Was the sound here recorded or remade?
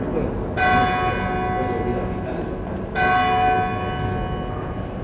recorded